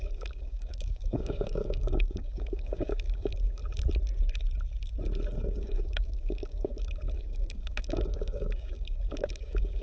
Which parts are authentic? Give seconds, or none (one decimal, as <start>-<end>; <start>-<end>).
3.6-5.6